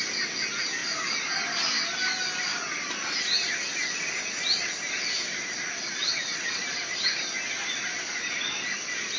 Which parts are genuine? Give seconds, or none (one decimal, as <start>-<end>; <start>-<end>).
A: 0.0-6.0; 6.6-9.2